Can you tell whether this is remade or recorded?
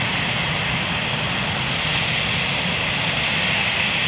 recorded